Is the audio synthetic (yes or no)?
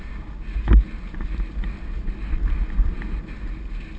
no